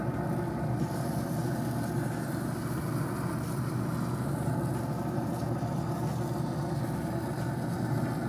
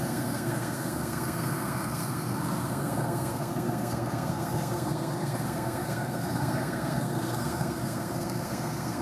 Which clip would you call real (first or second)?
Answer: first